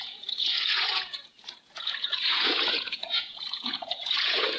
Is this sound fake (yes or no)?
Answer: yes